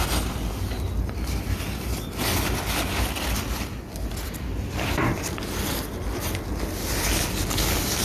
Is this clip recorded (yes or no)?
yes